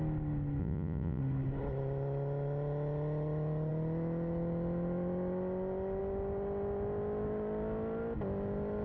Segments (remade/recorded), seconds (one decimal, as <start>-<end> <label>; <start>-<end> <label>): 0.0-0.6 recorded; 0.6-1.2 remade; 1.2-8.8 recorded